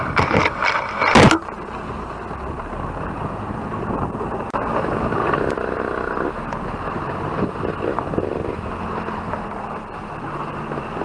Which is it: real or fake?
real